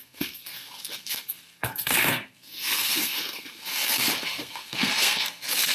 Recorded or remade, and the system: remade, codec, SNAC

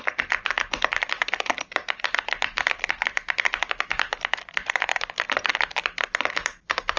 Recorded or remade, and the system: recorded